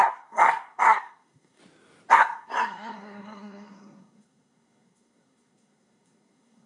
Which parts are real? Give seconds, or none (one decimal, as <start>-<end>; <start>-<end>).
1.6-2.1